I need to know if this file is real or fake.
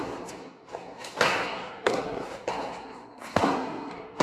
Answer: fake